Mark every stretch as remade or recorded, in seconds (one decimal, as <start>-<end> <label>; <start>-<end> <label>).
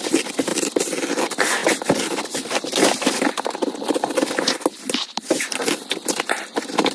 0.0-0.5 recorded; 0.5-1.2 remade; 1.2-6.9 recorded